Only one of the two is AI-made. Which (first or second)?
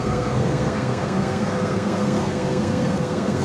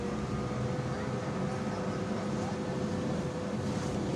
first